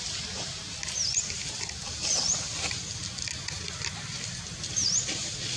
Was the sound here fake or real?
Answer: real